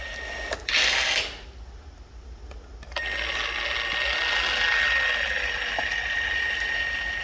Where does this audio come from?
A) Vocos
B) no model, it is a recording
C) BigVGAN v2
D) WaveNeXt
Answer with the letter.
B